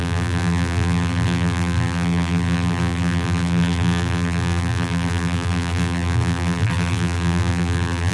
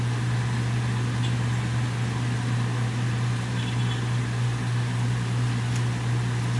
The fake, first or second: first